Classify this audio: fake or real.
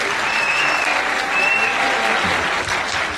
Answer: real